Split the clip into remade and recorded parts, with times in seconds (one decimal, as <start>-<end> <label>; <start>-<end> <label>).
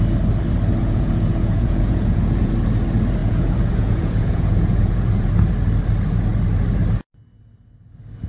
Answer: 0.0-0.8 recorded; 0.8-2.5 remade; 2.5-3.2 recorded; 3.2-5.3 remade; 5.3-8.3 recorded